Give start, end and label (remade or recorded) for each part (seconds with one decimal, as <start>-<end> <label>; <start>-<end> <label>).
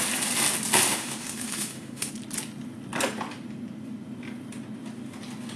0.0-0.9 recorded; 0.9-2.1 remade; 2.1-5.6 recorded